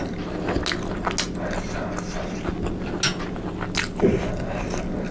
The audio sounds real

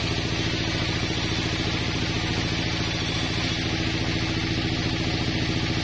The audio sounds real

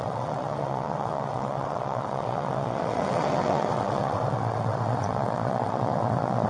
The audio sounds fake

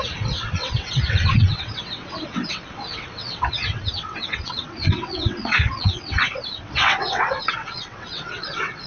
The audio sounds fake